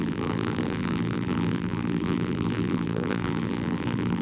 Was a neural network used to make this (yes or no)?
yes